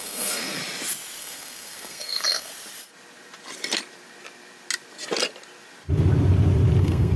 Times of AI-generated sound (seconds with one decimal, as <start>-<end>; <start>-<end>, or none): 0.0-0.6; 1.2-2.5; 6.8-7.2